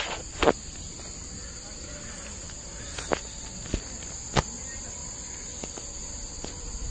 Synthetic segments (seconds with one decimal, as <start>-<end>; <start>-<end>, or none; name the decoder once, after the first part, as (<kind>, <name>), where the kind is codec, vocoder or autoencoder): none